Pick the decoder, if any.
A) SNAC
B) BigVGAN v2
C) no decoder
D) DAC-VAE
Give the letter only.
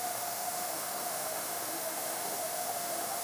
D